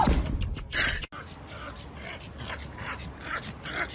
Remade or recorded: recorded